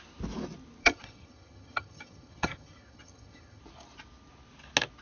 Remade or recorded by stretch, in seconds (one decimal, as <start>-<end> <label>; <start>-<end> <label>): 0.0-0.8 recorded; 0.8-3.6 remade; 3.6-5.0 recorded